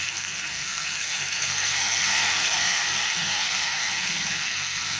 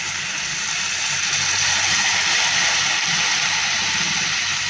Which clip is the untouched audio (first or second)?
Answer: second